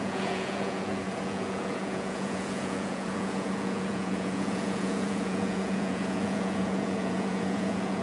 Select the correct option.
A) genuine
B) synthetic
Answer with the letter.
B